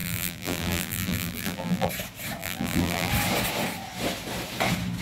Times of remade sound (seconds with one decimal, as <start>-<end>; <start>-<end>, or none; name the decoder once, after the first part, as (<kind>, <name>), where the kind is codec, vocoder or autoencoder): 0.0-1.9 (vocoder, BigVGAN v2); 2.4-3.1